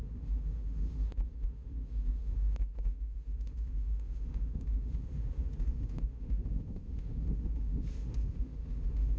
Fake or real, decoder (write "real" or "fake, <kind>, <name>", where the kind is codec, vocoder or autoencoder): fake, autoencoder, DAC-VAE